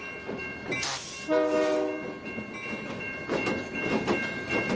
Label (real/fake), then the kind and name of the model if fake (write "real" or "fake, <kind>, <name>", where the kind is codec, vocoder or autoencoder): real